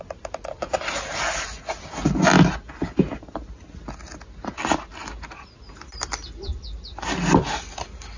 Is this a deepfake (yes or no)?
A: no